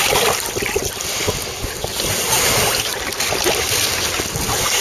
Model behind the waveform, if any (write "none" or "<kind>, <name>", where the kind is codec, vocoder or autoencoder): none